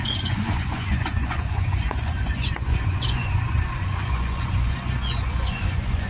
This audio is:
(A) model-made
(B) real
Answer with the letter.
A